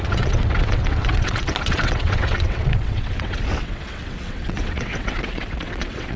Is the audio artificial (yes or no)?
yes